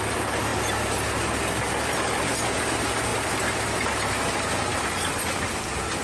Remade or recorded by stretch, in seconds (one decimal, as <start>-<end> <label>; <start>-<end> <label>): 0.0-6.0 recorded